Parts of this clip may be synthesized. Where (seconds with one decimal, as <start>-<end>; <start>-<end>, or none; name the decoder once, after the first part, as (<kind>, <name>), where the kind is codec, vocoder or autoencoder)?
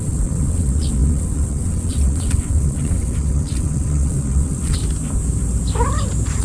0.0-4.8 (vocoder, WaveNeXt)